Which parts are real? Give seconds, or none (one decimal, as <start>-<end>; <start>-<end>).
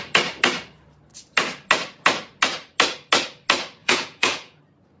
0.0-3.8; 4.6-5.0